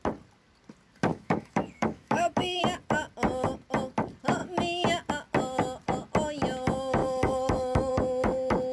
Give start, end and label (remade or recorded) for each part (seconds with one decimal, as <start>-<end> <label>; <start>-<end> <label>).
0.0-1.1 recorded; 1.1-2.6 remade; 2.6-7.0 recorded; 7.0-7.9 remade; 7.9-8.7 recorded